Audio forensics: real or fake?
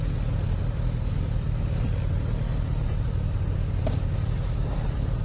real